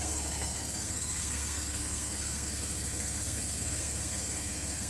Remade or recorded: remade